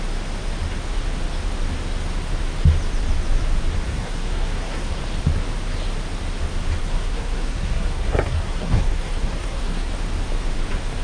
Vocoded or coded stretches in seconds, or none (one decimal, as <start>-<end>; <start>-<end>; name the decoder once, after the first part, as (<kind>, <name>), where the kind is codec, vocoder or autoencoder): 3.9-5.0 (codec, SNAC); 6.8-9.9